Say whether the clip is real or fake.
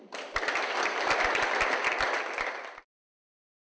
real